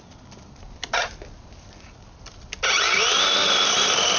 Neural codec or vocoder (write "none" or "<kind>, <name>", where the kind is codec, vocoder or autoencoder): none